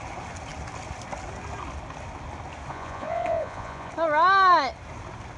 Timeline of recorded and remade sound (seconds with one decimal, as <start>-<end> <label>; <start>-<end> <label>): 0.0-2.7 recorded; 2.7-3.9 remade; 3.9-5.4 recorded